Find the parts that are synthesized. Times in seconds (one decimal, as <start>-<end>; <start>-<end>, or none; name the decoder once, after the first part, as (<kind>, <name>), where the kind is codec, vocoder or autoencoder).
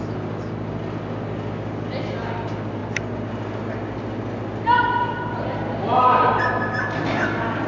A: none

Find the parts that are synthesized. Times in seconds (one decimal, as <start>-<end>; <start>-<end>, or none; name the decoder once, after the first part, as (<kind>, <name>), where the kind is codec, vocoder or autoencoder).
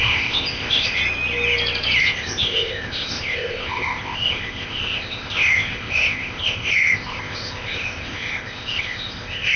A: 0.0-1.0 (codec, ZipCodec); 2.0-9.6